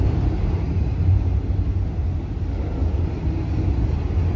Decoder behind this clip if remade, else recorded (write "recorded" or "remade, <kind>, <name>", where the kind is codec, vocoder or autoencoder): recorded